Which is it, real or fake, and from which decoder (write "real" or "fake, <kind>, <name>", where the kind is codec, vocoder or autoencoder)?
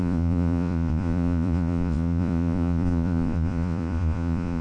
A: fake, vocoder, Vocos